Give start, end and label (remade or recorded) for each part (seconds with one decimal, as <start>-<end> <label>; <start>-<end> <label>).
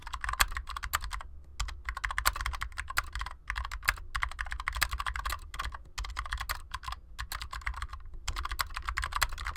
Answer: 0.0-7.9 recorded; 7.9-8.5 remade; 8.5-9.6 recorded